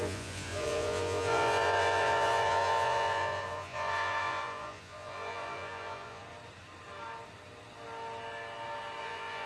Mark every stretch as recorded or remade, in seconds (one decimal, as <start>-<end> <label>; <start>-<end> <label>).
0.0-6.2 remade; 6.2-9.0 recorded; 9.0-9.5 remade